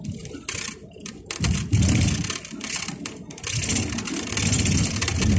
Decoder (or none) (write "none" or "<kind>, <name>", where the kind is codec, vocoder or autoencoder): none